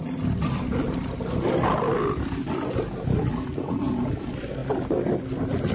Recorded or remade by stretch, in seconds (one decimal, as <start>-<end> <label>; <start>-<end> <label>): 0.0-5.7 recorded